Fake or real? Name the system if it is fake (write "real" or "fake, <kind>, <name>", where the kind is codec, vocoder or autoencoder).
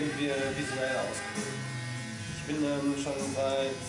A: real